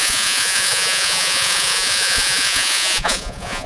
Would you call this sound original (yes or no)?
no